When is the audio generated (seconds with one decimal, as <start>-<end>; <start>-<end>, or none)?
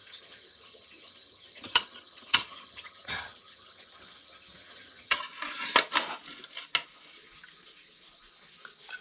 0.0-5.2